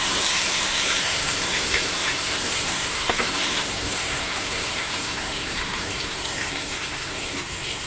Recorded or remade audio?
remade